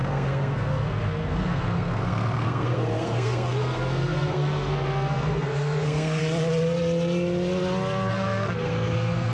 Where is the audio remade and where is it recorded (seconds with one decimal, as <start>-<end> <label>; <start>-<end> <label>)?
0.0-6.2 remade; 6.2-8.1 recorded; 8.1-9.3 remade